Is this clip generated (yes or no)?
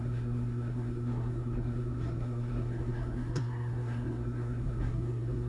yes